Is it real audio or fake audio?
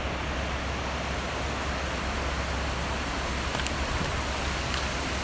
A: real